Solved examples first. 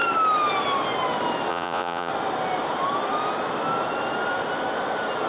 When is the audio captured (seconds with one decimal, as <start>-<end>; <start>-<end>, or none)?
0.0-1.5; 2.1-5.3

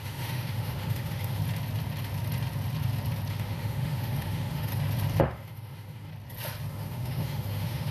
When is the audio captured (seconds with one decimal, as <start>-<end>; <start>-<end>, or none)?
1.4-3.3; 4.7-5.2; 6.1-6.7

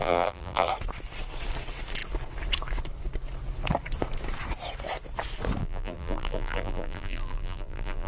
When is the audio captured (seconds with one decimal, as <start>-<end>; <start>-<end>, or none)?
0.7-5.6

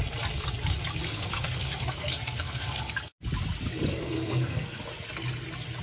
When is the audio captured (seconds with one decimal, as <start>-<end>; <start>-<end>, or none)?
0.0-1.1; 2.8-3.9; 4.8-5.8

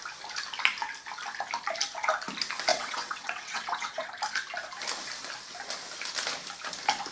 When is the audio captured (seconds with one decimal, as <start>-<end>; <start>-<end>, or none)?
0.0-2.7; 4.1-7.1